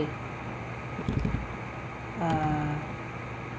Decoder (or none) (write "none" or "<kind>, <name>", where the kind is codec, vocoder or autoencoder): none